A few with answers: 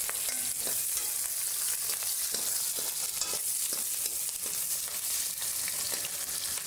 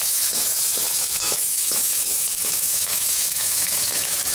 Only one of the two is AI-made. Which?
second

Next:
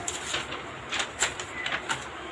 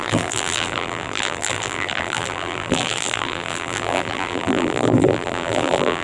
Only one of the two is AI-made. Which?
second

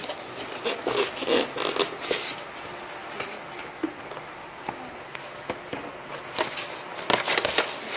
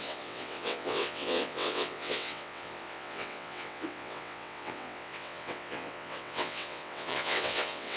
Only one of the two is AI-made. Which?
second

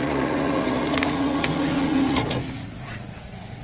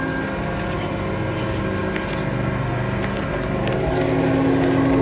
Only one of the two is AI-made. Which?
first